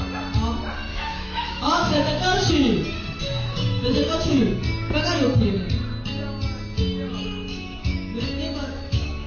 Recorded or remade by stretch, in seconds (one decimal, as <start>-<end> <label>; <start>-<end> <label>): 0.0-0.9 recorded; 0.9-2.5 remade; 2.5-3.2 recorded; 3.2-4.4 remade; 4.4-7.1 recorded; 7.1-9.3 remade